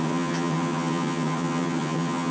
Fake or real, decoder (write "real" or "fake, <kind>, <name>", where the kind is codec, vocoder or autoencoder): fake, vocoder, HiFi-GAN